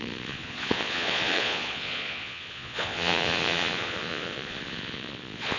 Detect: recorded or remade remade